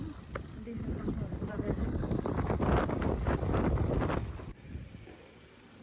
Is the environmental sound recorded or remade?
recorded